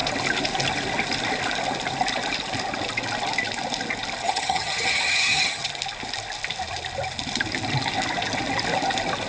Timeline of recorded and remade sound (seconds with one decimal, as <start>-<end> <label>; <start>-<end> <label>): 0.0-4.2 recorded; 4.2-5.7 remade; 5.7-9.3 recorded